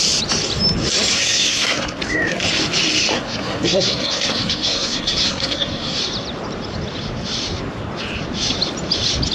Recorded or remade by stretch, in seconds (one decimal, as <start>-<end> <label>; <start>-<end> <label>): 0.0-1.1 recorded; 1.1-2.0 remade; 2.0-3.1 recorded; 3.1-6.0 remade; 6.0-9.3 recorded